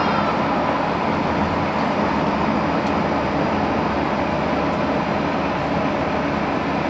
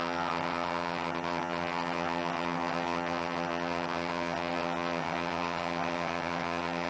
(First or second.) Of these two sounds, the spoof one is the second